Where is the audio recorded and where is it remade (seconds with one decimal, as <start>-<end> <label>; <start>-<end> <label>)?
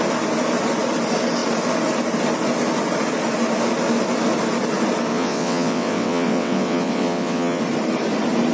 0.0-5.1 recorded; 5.1-7.6 remade; 7.6-8.5 recorded